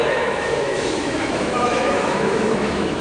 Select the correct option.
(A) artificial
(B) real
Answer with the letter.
A